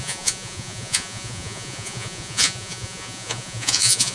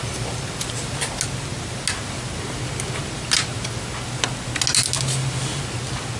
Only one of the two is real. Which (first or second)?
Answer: second